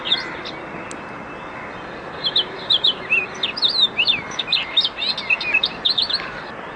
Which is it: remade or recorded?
recorded